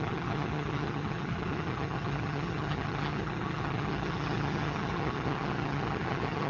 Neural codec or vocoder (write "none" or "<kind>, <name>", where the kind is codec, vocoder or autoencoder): vocoder, HiFi-GAN